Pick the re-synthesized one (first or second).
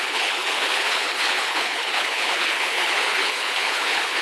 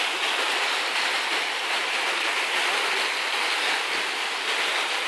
first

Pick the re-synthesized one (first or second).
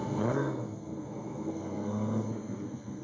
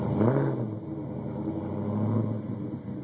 first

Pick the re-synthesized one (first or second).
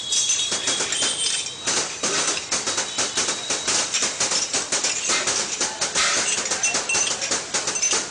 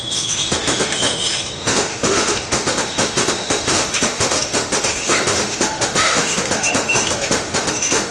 second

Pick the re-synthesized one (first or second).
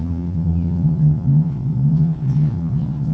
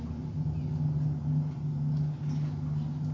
first